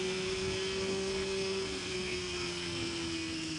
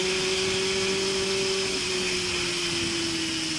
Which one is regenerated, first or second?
first